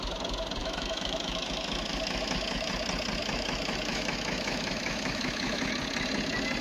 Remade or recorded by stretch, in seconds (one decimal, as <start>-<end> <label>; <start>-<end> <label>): 0.0-0.6 recorded; 0.6-2.7 remade; 2.7-3.2 recorded; 3.2-5.7 remade; 5.7-6.6 recorded